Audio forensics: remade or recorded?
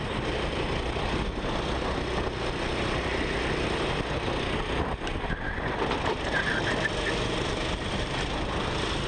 recorded